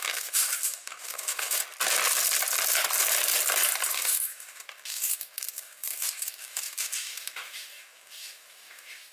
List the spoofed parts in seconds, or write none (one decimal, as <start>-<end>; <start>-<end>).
0.0-1.6; 3.9-9.1

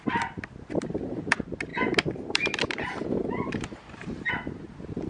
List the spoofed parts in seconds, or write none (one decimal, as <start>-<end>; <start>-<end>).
1.7-4.3

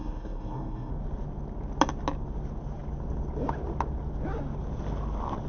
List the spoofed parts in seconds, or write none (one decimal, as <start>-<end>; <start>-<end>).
0.0-0.9

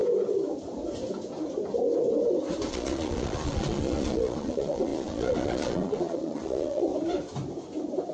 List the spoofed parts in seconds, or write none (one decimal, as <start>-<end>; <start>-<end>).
2.7-6.9